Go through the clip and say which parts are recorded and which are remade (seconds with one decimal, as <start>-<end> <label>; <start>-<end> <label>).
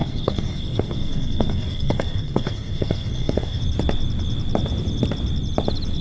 0.0-3.6 remade; 3.6-6.0 recorded